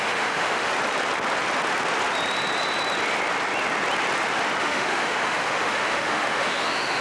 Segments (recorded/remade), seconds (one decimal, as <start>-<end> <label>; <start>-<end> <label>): 0.0-0.7 remade; 0.7-4.6 recorded; 4.6-7.0 remade